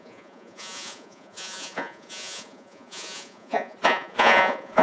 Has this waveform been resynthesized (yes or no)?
yes